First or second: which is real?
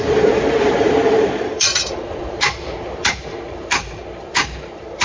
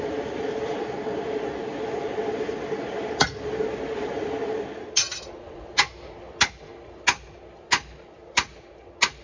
second